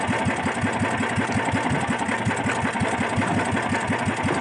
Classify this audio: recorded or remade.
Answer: recorded